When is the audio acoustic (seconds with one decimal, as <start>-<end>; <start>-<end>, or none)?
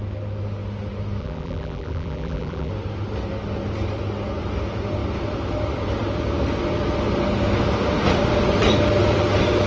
0.0-1.2; 2.7-9.7